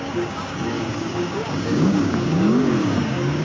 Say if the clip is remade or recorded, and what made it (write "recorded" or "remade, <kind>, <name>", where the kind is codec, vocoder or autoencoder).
remade, codec, DAC